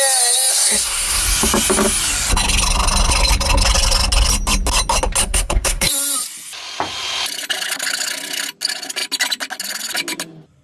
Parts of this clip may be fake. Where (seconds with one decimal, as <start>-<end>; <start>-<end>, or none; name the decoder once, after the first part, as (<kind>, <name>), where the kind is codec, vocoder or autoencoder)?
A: 0.5-1.2 (codec, SNAC); 5.2-5.9